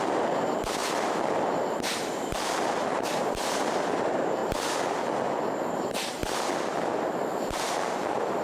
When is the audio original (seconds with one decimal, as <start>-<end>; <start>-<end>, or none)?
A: 0.8-1.4; 4.4-5.7; 6.2-7.3

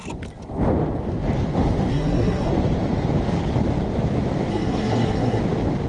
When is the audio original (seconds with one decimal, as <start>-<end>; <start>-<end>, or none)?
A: 0.0-1.9; 2.5-4.5; 5.4-5.9